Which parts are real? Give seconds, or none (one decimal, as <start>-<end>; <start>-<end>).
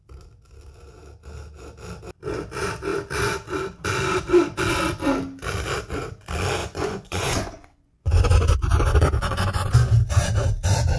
0.0-6.6; 9.9-11.0